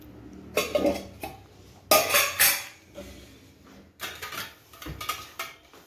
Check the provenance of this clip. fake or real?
real